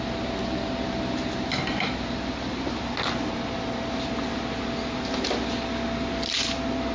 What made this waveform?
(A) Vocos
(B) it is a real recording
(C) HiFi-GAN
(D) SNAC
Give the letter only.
B